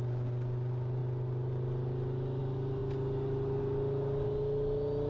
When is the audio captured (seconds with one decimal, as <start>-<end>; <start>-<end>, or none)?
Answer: 0.0-5.1